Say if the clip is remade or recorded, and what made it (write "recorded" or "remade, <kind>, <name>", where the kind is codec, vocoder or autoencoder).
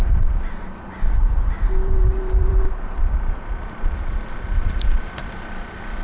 remade, vocoder, BigVGAN v2